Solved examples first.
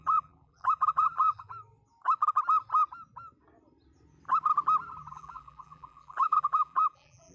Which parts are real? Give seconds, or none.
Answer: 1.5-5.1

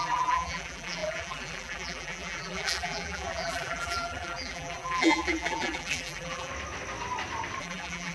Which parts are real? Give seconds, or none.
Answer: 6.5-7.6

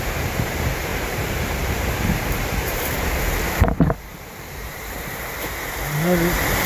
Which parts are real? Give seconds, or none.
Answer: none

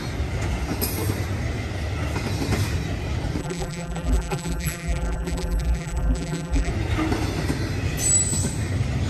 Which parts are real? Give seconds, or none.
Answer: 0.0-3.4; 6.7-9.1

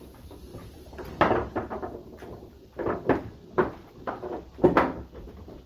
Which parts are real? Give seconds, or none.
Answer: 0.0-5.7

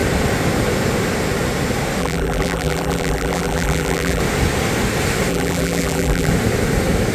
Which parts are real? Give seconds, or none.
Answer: 0.0-2.0; 4.2-5.3; 6.3-7.1

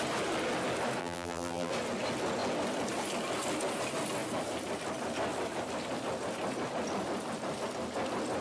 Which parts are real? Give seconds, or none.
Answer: 0.0-1.0; 1.7-8.4

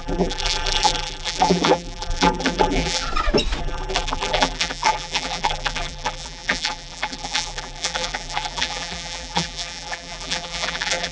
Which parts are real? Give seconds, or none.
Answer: 3.1-3.6